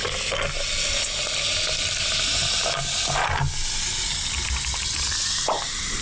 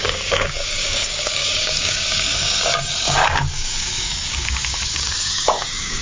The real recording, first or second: first